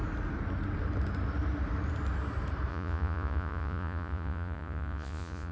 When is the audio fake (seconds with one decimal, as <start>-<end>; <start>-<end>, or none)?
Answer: 2.7-5.5